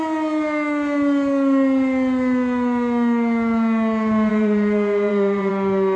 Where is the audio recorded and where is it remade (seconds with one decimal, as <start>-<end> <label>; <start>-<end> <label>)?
0.0-4.3 recorded; 4.3-5.5 remade; 5.5-6.0 recorded